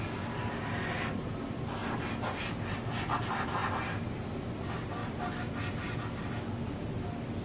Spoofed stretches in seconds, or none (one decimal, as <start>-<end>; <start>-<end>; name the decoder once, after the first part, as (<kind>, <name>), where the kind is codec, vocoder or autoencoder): none